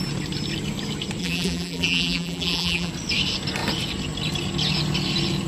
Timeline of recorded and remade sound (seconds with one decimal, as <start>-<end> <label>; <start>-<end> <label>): 0.0-1.2 recorded; 1.2-2.9 remade; 2.9-5.5 recorded